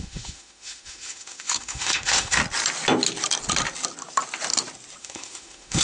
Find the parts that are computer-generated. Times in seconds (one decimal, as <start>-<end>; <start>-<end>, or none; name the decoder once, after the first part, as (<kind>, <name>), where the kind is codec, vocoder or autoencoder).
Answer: 0.0-2.4 (autoencoder, DAC-VAE); 5.0-5.8